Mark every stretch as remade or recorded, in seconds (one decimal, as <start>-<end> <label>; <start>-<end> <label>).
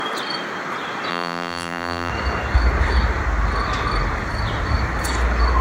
0.0-1.1 recorded; 1.1-2.1 remade; 2.1-5.6 recorded